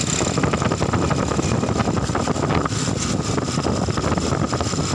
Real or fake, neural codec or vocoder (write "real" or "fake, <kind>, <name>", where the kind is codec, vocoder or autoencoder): real